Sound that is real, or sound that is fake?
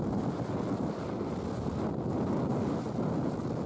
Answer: real